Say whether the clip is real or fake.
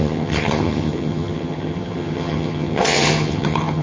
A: fake